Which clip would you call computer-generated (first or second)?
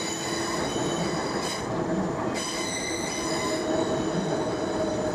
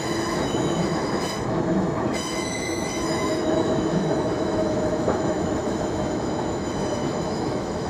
second